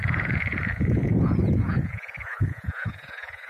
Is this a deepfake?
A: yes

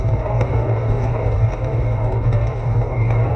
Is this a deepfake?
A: yes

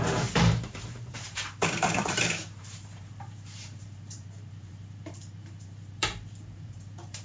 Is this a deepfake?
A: yes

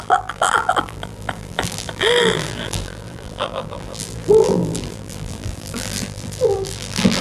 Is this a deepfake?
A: yes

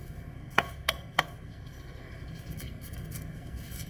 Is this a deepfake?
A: yes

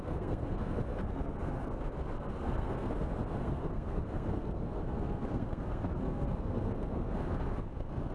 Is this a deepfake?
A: yes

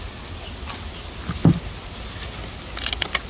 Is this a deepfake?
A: no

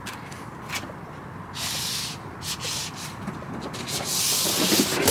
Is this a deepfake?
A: no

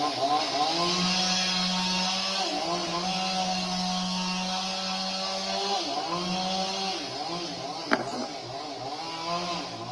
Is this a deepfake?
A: no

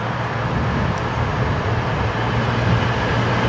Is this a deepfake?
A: no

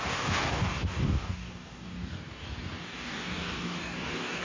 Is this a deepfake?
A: yes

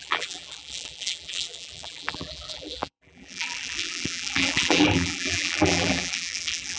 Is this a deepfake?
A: yes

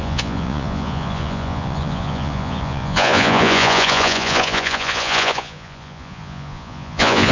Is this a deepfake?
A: yes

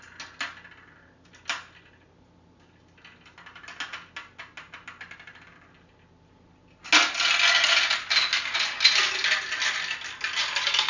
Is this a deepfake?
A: no